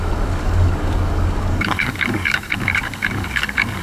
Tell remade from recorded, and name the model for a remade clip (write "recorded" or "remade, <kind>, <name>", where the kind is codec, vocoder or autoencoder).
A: remade, codec, DAC